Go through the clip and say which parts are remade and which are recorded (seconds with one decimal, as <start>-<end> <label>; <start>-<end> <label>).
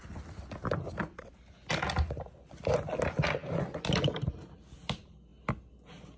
0.0-6.2 recorded